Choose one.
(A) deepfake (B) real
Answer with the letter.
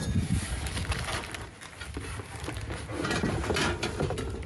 B